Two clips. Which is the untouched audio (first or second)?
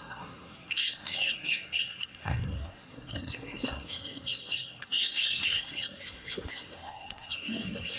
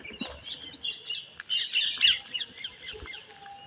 second